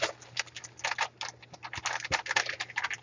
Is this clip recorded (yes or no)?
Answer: yes